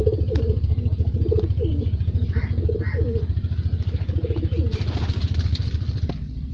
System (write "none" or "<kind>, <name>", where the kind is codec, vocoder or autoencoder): none